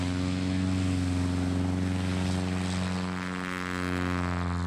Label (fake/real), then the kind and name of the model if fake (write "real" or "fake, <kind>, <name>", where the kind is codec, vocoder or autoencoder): real